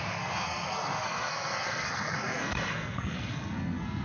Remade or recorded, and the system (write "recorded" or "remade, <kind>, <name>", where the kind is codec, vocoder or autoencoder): remade, codec, SNAC